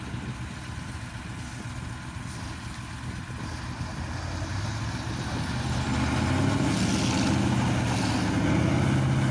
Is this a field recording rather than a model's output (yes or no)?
yes